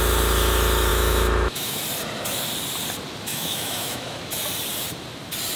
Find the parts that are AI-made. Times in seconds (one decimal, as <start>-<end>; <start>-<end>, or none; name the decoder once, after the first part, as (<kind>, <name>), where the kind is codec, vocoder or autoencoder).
0.9-1.8 (autoencoder, DAC-VAE); 3.3-4.2